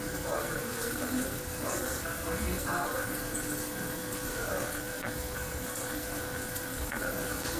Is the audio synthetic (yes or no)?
yes